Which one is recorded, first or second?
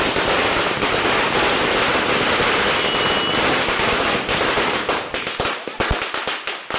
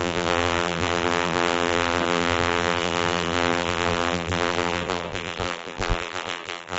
first